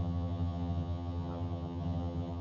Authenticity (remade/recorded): remade